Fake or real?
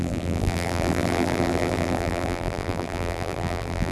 fake